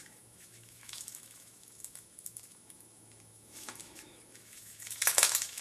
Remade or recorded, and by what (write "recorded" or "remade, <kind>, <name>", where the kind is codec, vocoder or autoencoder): remade, autoencoder, DAC-VAE